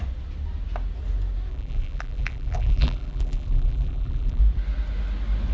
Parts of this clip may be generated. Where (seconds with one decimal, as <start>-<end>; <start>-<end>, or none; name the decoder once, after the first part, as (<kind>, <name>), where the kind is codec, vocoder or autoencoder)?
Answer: 1.5-4.4 (vocoder, BigVGAN v2)